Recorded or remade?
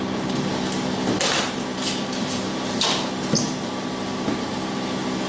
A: recorded